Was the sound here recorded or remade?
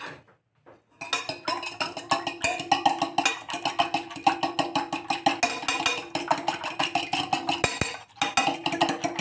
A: recorded